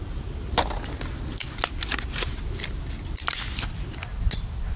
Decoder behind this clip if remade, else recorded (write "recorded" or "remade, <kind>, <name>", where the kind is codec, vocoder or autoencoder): recorded